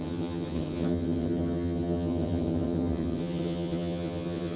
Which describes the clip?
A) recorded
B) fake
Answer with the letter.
B